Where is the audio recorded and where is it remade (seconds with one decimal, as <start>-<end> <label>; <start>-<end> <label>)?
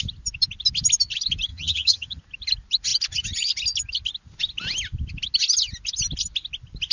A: 0.0-1.5 recorded; 1.5-2.2 remade; 2.2-6.9 recorded